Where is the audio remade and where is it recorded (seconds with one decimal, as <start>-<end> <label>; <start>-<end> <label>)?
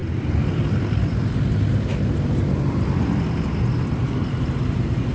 0.0-0.5 recorded; 0.5-1.9 remade; 1.9-5.1 recorded